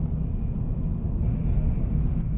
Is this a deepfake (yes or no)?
no